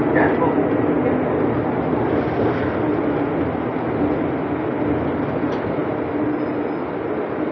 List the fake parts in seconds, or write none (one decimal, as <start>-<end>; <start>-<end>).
none